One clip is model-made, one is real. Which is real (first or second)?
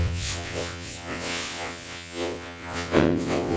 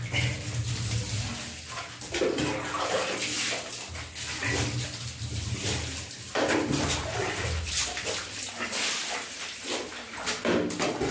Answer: second